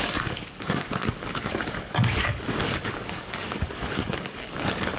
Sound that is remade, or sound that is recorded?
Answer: remade